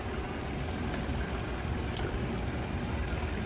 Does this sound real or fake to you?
real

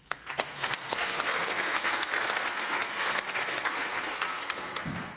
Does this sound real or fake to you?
fake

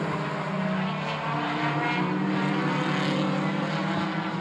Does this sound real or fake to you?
real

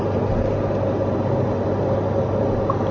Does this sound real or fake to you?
real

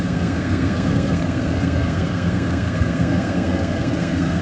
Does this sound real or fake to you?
fake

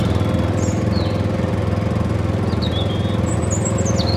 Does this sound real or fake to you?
real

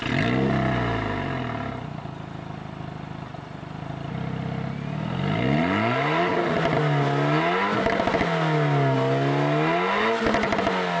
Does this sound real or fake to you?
real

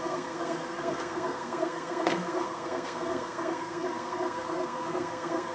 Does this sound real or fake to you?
fake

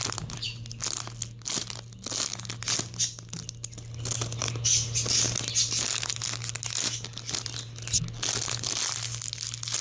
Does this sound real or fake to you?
real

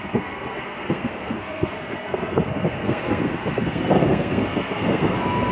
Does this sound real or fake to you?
fake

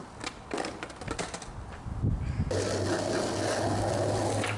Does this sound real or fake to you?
real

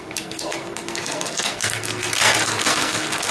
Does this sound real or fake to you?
fake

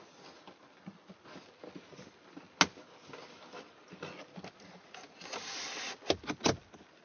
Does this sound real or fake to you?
real